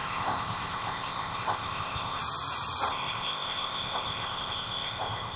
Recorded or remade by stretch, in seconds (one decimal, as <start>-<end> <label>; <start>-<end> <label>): 0.0-2.2 remade; 2.2-2.9 recorded; 2.9-5.4 remade